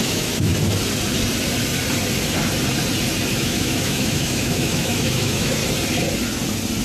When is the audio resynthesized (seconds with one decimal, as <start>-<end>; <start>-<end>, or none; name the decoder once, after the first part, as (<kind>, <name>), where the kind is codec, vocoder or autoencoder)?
0.0-0.5 (autoencoder, DAC-VAE); 3.3-5.6